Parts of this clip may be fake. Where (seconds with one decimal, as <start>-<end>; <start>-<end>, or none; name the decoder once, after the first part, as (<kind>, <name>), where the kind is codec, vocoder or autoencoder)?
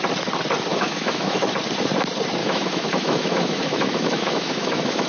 0.7-1.4 (autoencoder, DAC-VAE); 2.4-5.1